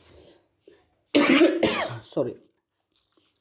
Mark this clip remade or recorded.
recorded